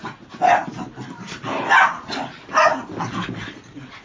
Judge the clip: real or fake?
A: real